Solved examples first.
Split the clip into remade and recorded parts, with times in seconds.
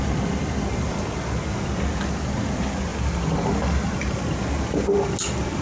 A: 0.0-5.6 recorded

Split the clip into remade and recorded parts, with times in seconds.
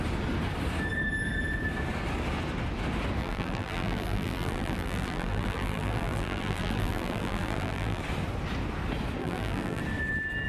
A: 0.0-3.2 recorded; 3.2-8.0 remade; 8.0-9.2 recorded; 9.2-9.8 remade; 9.8-10.5 recorded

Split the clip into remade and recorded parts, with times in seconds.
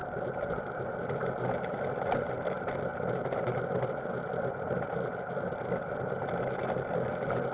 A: 0.0-7.5 recorded